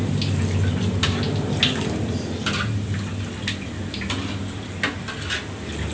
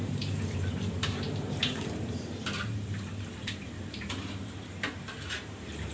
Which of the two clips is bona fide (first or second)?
first